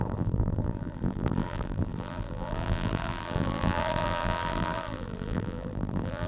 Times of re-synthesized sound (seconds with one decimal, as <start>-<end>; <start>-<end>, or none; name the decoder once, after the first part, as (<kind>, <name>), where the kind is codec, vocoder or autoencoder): 0.0-6.3 (vocoder, BigVGAN v2)